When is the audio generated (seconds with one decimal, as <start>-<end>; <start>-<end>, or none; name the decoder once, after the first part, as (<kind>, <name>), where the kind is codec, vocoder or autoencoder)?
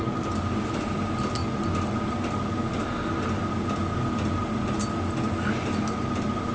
none